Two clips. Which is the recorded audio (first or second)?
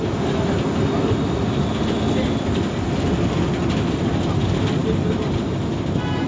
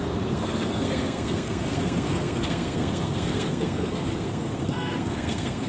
first